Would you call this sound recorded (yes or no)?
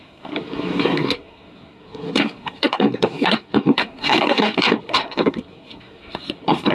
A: no